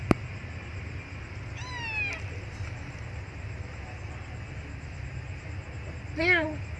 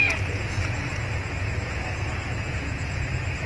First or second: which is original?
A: first